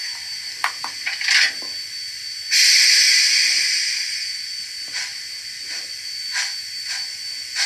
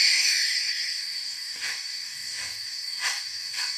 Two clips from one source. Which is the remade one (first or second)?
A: second